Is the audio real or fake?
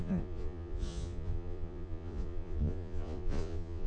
fake